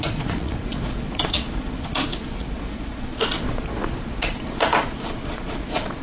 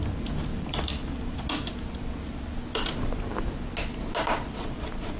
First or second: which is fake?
first